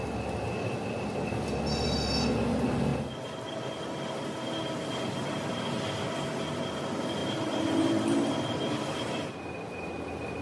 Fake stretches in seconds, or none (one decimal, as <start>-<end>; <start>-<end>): 7.2-9.3